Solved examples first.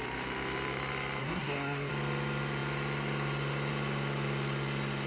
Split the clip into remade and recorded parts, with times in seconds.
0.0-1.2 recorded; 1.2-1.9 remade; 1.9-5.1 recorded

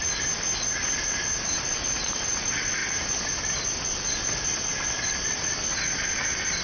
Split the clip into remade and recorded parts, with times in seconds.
0.0-6.6 recorded

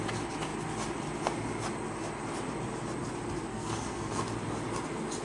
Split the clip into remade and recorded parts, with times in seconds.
0.0-3.5 recorded; 3.5-4.2 remade; 4.2-5.2 recorded

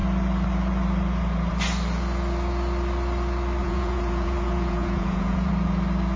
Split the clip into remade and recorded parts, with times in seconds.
0.0-3.6 recorded; 3.6-5.5 remade; 5.5-6.2 recorded

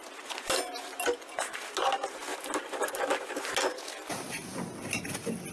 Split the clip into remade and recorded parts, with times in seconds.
0.0-5.5 recorded

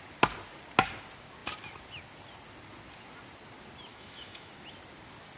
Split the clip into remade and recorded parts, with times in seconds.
0.0-3.9 recorded; 3.9-4.5 remade; 4.5-5.4 recorded

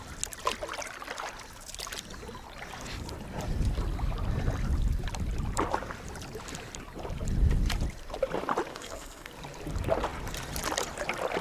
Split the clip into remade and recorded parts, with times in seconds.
0.0-8.7 recorded; 8.7-9.3 remade; 9.3-11.4 recorded

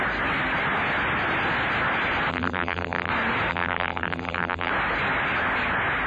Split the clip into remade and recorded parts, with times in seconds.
0.0-2.3 recorded; 2.3-3.1 remade; 3.1-3.5 recorded; 3.5-4.7 remade; 4.7-6.1 recorded